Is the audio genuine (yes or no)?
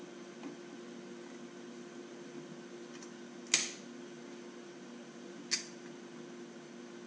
yes